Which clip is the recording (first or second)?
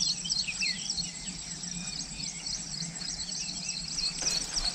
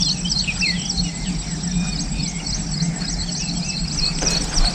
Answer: second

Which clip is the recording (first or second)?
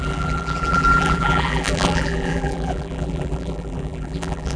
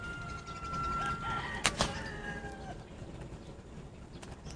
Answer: second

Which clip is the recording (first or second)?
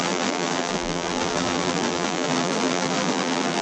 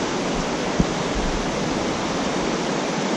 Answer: second